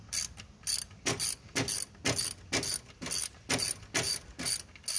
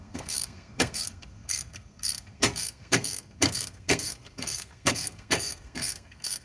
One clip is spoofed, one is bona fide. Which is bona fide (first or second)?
first